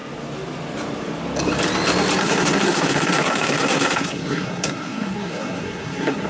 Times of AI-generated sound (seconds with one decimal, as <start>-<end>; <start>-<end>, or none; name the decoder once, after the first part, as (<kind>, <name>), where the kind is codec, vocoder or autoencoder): 2.2-6.3 (codec, SNAC)